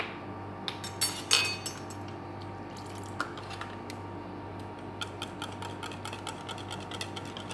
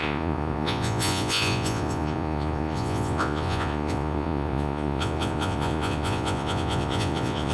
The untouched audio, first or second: first